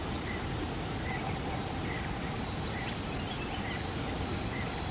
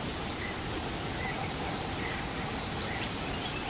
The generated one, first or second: second